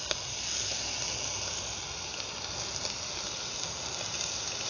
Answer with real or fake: real